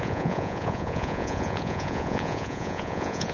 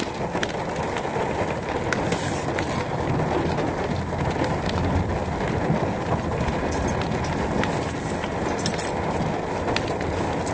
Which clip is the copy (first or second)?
first